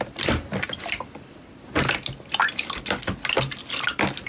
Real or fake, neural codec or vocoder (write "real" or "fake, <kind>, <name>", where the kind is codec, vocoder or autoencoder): real